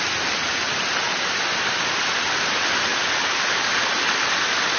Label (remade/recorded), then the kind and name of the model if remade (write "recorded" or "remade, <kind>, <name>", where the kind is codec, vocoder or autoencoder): recorded